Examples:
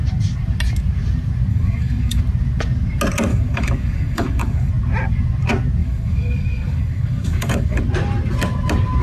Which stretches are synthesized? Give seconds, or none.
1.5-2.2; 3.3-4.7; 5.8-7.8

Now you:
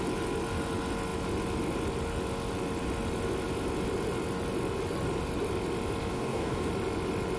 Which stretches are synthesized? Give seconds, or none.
6.1-6.7

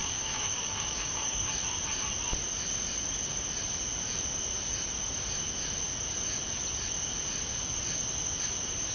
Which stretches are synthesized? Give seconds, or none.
0.0-1.5

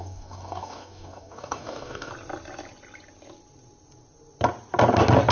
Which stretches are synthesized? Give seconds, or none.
0.0-2.1